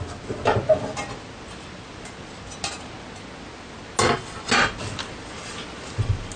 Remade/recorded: recorded